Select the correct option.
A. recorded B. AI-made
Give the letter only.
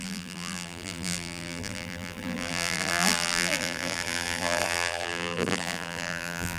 B